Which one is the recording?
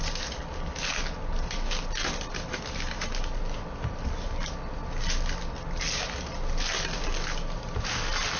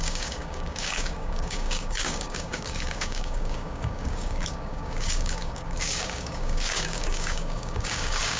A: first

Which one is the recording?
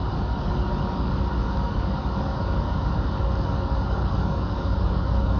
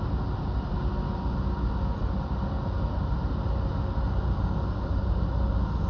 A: second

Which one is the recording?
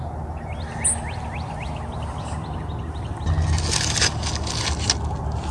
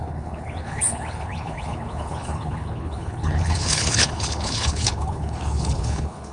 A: first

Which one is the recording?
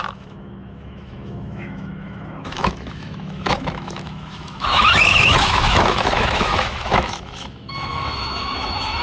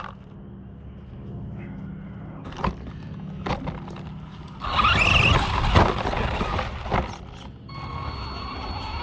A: second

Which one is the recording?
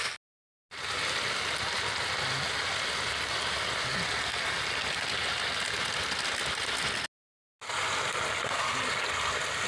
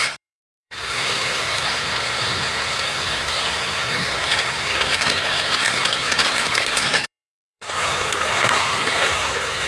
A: first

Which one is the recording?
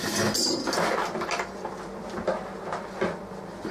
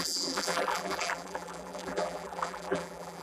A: first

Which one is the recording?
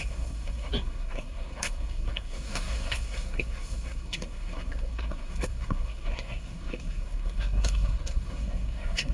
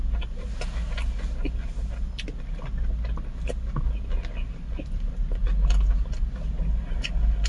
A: second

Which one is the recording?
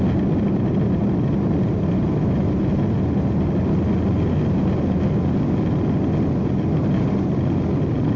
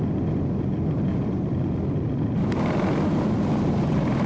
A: first